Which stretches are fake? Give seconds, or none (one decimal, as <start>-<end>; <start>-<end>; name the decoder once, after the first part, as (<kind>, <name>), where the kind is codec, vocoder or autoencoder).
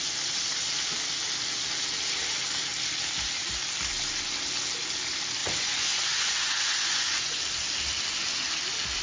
5.4-7.4 (vocoder, Vocos)